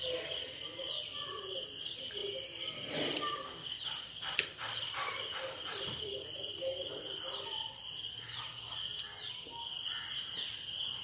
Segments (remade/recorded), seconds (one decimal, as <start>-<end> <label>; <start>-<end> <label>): 0.0-11.0 recorded